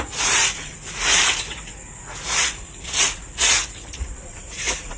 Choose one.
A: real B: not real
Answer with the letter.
B